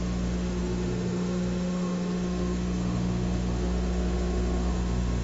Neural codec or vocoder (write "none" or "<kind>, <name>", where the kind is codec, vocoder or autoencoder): autoencoder, DAC-VAE